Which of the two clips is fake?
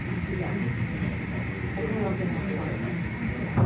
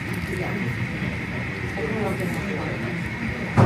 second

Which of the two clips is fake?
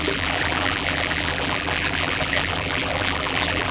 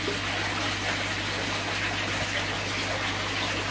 first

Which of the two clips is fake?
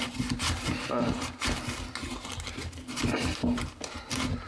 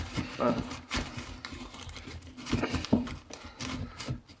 second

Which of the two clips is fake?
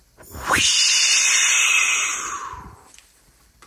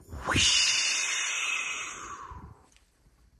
second